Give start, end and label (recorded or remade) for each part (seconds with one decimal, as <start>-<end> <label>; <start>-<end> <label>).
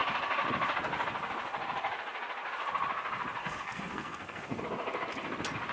0.0-3.4 recorded; 3.4-4.6 remade; 4.6-5.7 recorded